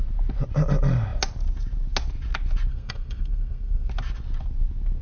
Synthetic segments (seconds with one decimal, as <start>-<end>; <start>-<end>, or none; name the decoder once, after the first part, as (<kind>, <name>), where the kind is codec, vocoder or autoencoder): 2.7-3.9 (codec, SNAC)